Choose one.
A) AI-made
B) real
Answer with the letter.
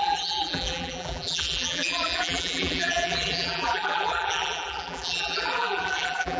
A